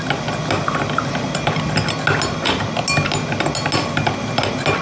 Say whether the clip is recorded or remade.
recorded